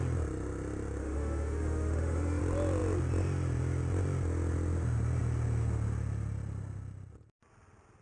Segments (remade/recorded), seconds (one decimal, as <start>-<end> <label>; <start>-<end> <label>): 0.0-1.0 recorded; 1.0-2.4 remade; 2.4-8.0 recorded

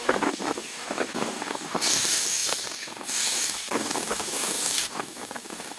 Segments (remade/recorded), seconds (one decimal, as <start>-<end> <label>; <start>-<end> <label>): 0.0-5.8 remade

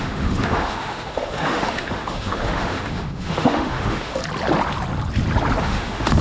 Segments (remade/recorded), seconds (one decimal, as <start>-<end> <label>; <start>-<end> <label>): 0.0-4.2 remade; 4.2-5.6 recorded; 5.6-6.2 remade

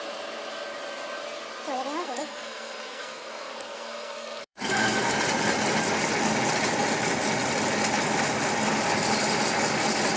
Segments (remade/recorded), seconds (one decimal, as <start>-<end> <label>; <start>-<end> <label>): 0.0-2.0 recorded; 2.0-5.1 remade; 5.1-10.2 recorded

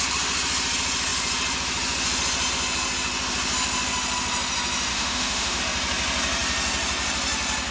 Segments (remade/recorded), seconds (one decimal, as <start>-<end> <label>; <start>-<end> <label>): 0.0-4.9 recorded; 4.9-5.6 remade; 5.6-7.7 recorded

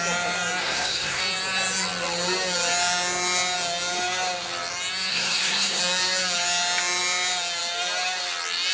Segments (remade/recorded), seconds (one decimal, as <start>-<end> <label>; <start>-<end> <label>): 0.0-0.6 recorded; 0.6-1.2 remade; 1.2-5.1 recorded; 5.1-5.8 remade; 5.8-8.7 recorded

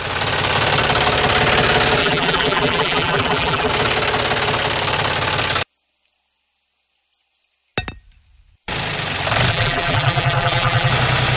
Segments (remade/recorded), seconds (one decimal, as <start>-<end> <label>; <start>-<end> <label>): 0.0-2.0 recorded; 2.0-3.7 remade; 3.7-9.5 recorded; 9.5-10.9 remade; 10.9-11.4 recorded

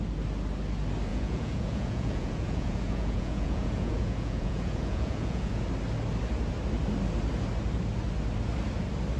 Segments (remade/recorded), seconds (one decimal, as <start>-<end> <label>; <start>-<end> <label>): 0.0-1.1 recorded; 1.1-5.6 remade; 5.6-9.2 recorded